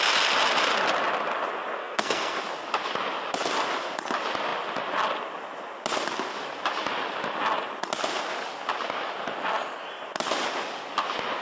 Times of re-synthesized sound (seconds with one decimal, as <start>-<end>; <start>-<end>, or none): 1.8-2.4